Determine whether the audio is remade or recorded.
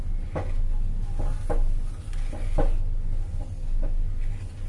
recorded